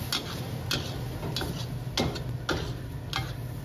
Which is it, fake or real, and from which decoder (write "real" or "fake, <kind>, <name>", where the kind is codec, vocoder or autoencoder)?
real